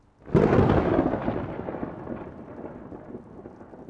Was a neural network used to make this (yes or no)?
no